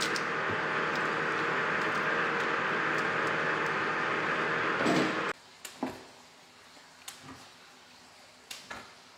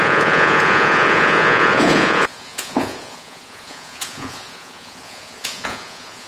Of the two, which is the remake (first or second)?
second